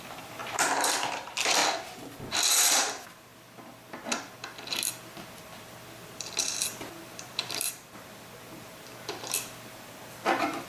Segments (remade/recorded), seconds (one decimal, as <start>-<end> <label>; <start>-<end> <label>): 0.0-1.6 remade; 1.6-2.3 recorded; 2.3-3.3 remade; 3.3-5.4 recorded; 5.4-10.7 remade